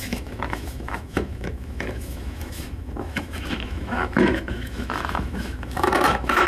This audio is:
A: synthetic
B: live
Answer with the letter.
A